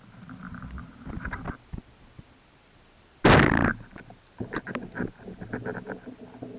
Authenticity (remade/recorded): recorded